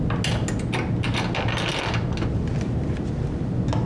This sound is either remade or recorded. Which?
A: recorded